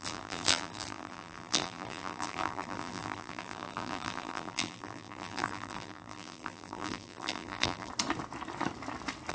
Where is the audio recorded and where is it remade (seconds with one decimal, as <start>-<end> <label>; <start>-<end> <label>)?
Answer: 0.0-7.9 remade; 7.9-9.3 recorded